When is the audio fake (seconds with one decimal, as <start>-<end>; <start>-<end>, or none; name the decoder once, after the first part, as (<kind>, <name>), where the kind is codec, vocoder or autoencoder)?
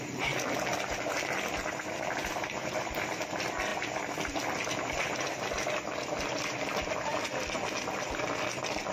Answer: 2.2-2.7 (vocoder, BigVGAN v2)